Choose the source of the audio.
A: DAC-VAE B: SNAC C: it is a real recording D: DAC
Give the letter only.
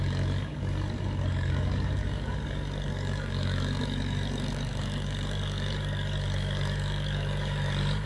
D